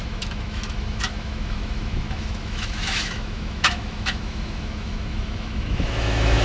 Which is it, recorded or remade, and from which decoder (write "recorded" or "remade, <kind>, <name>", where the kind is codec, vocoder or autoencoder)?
remade, autoencoder, DAC-VAE